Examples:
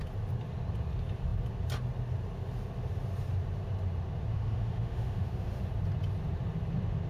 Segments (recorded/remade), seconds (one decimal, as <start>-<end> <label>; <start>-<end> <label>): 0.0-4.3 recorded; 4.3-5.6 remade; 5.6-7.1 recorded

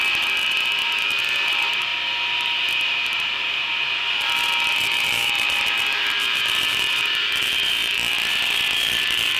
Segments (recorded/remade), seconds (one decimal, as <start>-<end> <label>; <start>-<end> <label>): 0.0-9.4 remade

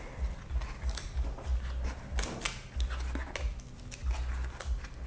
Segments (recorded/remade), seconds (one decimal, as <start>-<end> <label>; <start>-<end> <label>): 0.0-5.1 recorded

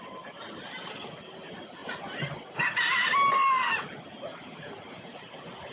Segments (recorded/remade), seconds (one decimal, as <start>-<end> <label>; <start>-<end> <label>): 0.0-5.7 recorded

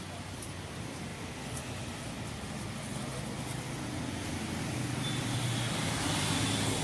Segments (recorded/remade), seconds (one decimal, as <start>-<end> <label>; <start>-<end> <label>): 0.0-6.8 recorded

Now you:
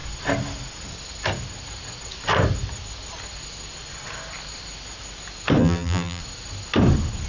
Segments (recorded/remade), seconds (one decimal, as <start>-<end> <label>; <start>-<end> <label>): 0.0-5.6 recorded; 5.6-6.2 remade; 6.2-7.3 recorded

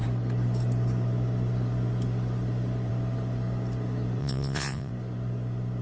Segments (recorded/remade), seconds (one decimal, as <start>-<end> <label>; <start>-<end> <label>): 0.0-4.2 recorded; 4.2-4.9 remade; 4.9-5.8 recorded

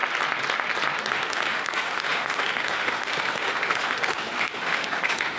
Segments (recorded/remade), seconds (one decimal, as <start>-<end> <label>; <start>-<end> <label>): 0.0-1.1 recorded; 1.1-5.4 remade